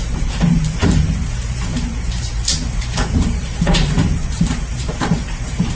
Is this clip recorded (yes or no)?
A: no